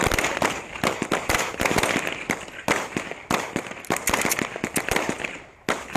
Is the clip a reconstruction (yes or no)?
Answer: no